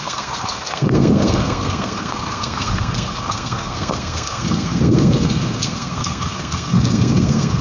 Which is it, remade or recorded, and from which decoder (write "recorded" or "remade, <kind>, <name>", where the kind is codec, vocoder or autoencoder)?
remade, codec, SNAC